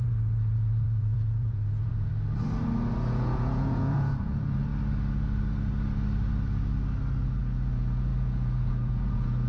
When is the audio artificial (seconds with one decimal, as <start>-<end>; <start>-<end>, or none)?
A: 0.0-2.1; 3.1-4.7; 7.4-9.5